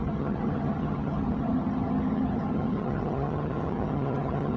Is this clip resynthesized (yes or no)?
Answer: yes